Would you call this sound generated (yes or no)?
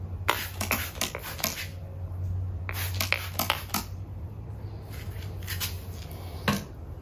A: no